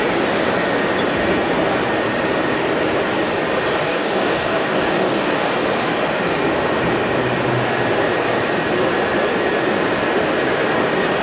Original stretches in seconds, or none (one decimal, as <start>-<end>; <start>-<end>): 0.0-3.8; 5.5-11.2